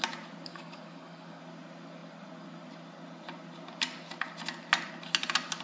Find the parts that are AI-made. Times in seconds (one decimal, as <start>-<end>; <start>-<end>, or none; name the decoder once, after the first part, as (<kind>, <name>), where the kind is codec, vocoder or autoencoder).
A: 0.5-1.4 (codec, DAC)